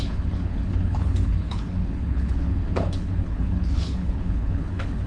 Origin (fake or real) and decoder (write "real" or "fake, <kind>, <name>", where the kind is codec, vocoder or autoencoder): fake, codec, HILCodec